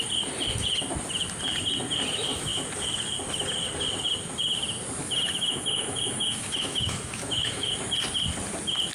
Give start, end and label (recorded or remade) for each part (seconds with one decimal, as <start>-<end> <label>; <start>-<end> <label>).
0.0-5.0 recorded; 5.0-7.7 remade; 7.7-8.9 recorded